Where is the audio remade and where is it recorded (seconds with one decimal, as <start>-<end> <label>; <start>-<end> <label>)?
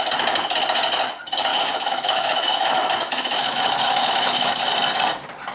0.0-1.5 recorded; 1.5-4.7 remade; 4.7-5.5 recorded